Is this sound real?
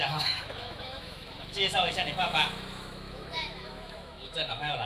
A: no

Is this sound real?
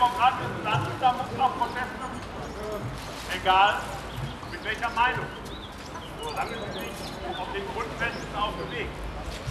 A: yes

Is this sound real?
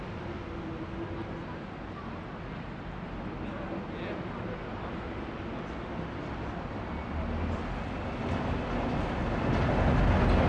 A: yes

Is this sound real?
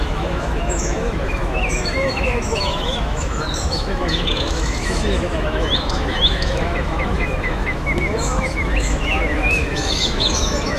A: no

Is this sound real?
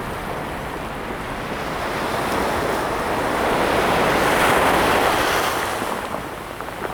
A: yes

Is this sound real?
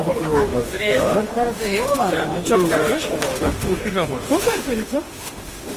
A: no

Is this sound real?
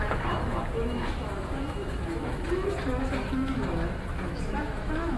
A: no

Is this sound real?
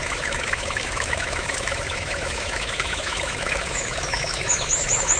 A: no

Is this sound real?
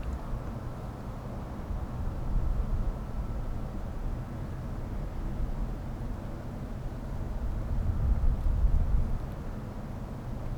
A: yes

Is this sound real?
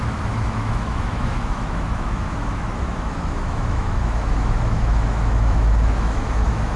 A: no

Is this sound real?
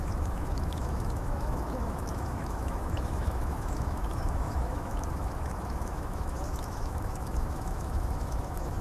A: no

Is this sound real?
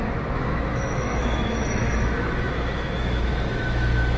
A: no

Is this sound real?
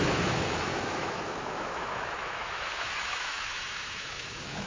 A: no